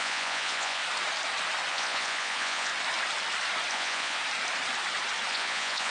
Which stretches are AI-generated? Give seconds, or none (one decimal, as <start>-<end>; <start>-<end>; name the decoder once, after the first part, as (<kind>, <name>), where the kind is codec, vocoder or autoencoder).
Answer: 0.0-0.8 (vocoder, Vocos); 1.7-2.7; 3.7-4.2; 5.3-5.9